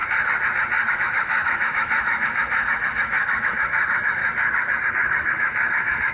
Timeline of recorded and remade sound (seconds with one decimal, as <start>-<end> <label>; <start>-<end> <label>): 0.0-0.9 recorded; 0.9-4.2 remade; 4.2-4.9 recorded; 4.9-6.1 remade